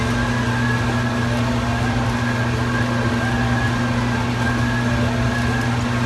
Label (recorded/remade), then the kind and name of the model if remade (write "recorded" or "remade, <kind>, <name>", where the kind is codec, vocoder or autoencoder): recorded